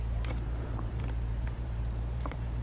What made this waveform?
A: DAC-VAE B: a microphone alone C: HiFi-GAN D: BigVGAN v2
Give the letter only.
D